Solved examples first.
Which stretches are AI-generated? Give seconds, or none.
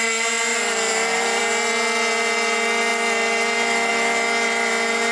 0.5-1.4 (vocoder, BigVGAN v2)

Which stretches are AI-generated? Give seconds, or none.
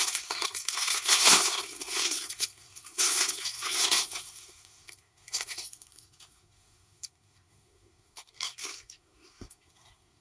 0.0-10.2 (codec, SNAC)